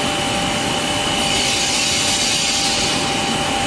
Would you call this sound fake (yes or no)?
no